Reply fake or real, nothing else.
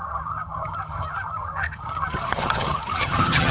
fake